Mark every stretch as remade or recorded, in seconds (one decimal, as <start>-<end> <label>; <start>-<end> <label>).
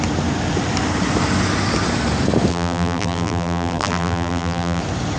0.0-2.5 recorded; 2.5-4.8 remade; 4.8-5.2 recorded